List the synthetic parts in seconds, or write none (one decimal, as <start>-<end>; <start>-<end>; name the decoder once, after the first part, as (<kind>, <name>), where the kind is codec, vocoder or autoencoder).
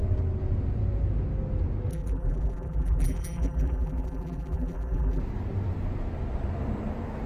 1.9-5.2 (vocoder, BigVGAN v2)